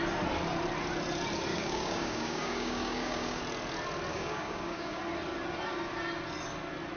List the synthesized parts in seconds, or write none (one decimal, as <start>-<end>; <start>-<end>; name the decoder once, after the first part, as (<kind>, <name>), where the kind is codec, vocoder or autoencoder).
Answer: 1.5-3.4 (codec, DAC); 4.1-5.0